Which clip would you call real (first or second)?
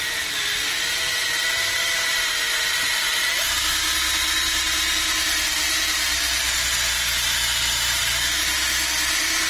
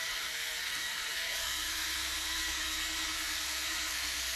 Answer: first